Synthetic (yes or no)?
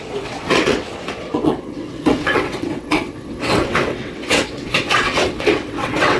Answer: yes